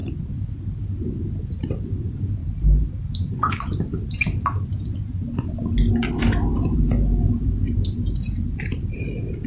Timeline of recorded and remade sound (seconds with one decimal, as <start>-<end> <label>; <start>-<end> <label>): 0.0-2.4 recorded; 2.4-3.3 remade; 3.3-6.5 recorded; 6.5-9.0 remade; 9.0-9.5 recorded